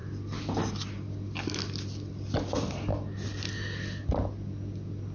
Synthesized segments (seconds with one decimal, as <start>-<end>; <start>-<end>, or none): none